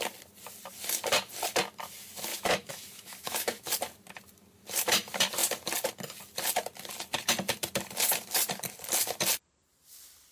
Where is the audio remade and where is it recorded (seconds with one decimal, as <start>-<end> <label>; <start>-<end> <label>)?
0.0-2.3 recorded; 2.3-3.7 remade; 3.7-10.3 recorded